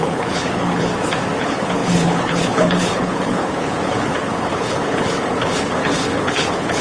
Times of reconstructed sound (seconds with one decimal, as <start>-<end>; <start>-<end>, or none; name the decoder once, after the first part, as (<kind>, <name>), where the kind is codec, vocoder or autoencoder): 0.0-0.9 (codec, HILCodec); 1.4-6.8